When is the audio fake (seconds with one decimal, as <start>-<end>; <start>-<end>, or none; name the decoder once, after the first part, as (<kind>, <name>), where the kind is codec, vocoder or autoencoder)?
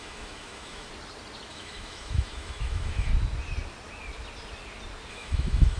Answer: 0.0-0.9 (autoencoder, DAC-VAE); 1.5-3.1; 5.1-5.8